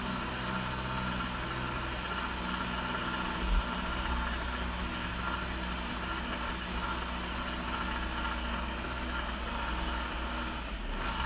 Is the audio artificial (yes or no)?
no